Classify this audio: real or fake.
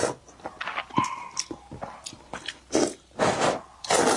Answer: real